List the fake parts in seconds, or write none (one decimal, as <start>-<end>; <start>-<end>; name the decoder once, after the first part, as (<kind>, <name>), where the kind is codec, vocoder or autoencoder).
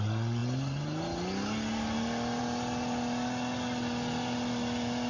none